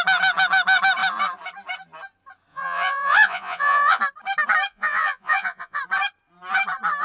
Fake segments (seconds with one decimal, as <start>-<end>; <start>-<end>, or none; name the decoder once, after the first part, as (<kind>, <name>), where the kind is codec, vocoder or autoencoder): 2.5-4.0 (vocoder, Vocos); 4.7-5.8